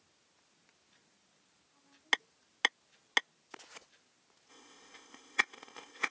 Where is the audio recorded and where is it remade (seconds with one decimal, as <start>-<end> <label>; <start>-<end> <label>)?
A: 0.0-4.5 recorded; 4.5-6.1 remade